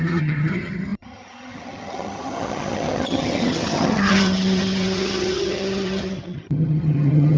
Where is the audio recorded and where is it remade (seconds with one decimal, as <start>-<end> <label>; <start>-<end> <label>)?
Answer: 0.0-7.4 remade